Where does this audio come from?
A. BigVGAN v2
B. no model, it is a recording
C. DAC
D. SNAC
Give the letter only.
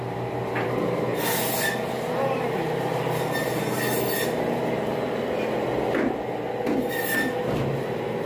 B